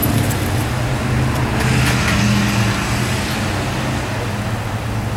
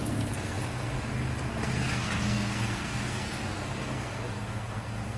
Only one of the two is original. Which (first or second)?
first